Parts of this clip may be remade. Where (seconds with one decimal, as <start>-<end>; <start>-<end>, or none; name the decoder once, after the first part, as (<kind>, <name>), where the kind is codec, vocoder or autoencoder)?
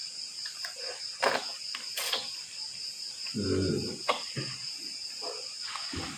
none